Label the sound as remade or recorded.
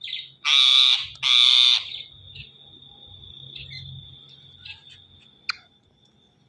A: recorded